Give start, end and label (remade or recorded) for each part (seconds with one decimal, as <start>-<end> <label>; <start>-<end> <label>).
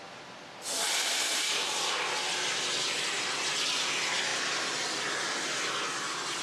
0.0-6.4 recorded